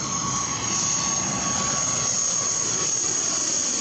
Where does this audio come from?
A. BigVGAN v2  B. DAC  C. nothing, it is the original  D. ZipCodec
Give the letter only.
C